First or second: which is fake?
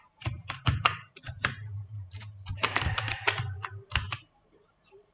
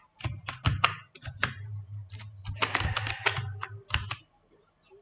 first